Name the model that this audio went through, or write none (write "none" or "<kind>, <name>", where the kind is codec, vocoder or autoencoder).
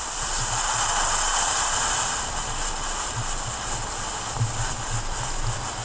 none